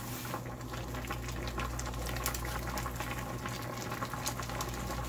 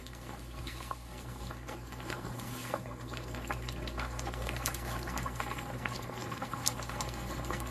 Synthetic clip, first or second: second